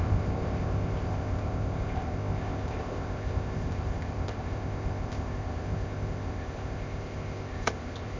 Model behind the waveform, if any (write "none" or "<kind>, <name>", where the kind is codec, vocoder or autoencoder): codec, ZipCodec